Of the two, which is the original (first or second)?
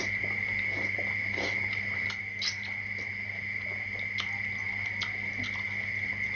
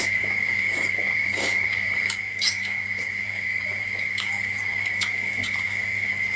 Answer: first